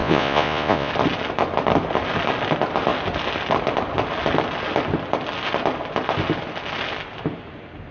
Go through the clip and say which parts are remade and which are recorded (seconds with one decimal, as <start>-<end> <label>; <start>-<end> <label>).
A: 0.0-0.9 remade; 0.9-7.9 recorded